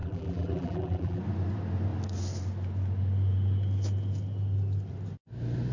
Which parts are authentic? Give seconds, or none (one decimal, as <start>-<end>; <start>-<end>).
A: 1.2-5.7